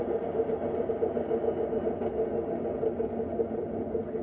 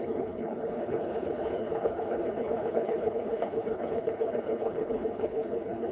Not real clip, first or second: second